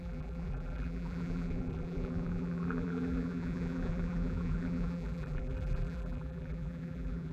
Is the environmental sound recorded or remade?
remade